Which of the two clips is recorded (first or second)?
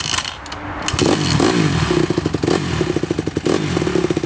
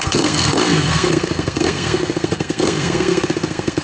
first